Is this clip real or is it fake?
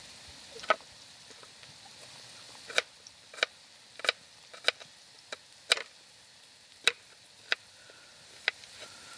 real